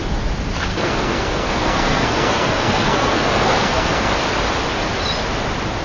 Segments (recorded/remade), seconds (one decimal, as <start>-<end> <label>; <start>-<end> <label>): 0.0-0.7 recorded; 0.7-4.1 remade; 4.1-5.8 recorded